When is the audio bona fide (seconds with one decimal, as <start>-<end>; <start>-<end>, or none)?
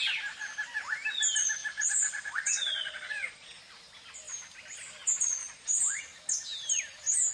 0.0-1.6; 3.6-5.4; 6.0-7.3